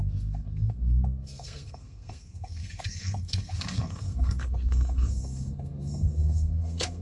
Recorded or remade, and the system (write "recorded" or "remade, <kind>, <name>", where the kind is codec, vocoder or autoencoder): remade, codec, SNAC